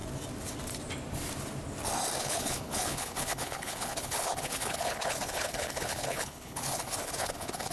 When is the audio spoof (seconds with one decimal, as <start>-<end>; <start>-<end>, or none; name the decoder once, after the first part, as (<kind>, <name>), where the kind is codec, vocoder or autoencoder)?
2.2-7.7 (codec, HILCodec)